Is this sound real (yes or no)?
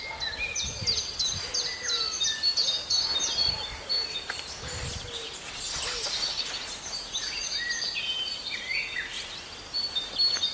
yes